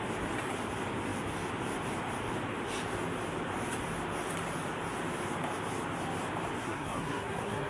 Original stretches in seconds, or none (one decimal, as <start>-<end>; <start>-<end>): 0.0-6.6